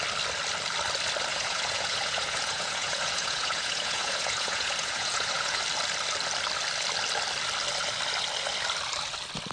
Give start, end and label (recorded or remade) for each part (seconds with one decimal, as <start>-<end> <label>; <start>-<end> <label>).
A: 0.0-1.3 recorded; 1.3-5.6 remade; 5.6-9.5 recorded